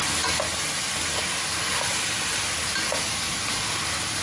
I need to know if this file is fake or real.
real